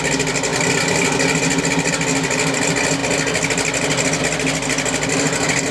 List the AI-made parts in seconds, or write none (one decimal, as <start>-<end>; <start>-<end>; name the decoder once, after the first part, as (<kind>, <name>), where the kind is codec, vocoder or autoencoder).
none